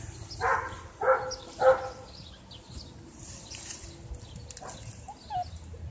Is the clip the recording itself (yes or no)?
yes